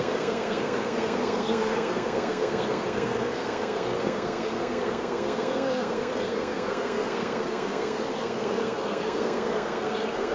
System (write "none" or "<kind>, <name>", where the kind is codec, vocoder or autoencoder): codec, SNAC